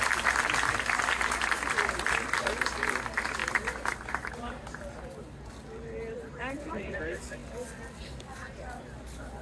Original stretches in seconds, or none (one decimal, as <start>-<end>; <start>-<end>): 0.0-9.4